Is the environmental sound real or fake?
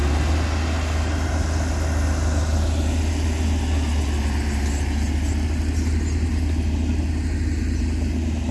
real